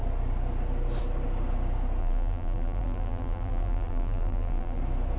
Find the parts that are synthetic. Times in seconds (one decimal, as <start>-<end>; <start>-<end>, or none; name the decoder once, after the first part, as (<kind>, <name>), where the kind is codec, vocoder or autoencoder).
2.0-4.8 (vocoder, BigVGAN v2)

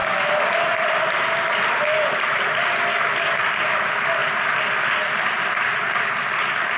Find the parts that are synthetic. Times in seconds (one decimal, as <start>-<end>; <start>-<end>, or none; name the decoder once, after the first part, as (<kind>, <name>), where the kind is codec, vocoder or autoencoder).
none

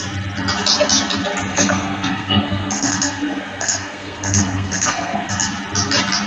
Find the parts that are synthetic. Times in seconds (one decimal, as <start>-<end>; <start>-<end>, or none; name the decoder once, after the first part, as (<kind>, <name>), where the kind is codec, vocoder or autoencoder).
1.5-5.3 (codec, SNAC)

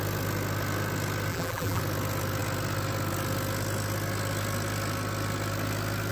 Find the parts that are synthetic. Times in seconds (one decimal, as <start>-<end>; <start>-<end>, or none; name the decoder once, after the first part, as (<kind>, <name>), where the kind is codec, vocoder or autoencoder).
1.3-1.8 (vocoder, BigVGAN v2)

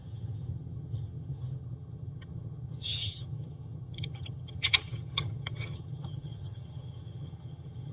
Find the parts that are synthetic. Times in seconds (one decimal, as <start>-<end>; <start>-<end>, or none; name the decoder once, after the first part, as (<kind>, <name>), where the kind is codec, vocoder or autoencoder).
0.0-7.9 (vocoder, HiFi-GAN)

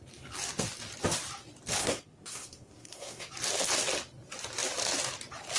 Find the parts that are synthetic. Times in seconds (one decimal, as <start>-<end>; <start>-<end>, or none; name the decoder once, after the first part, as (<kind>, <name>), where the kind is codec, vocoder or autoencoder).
1.8-3.3 (codec, SNAC)